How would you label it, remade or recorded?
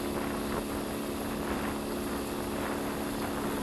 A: recorded